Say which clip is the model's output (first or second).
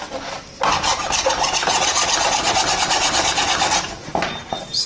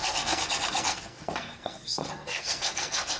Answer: second